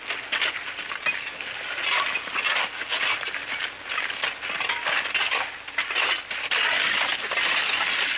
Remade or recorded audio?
recorded